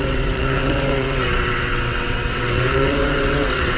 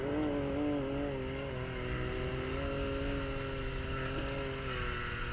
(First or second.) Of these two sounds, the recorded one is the second